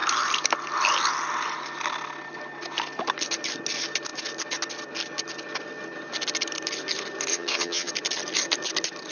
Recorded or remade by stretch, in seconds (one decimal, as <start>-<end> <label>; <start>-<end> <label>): 0.0-7.3 recorded; 7.3-7.9 remade; 7.9-9.1 recorded